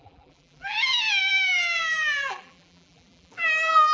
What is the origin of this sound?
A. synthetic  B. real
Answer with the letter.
A